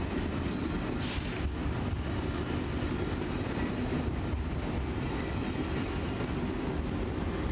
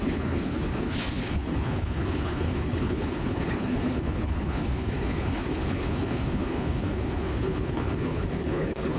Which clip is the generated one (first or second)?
second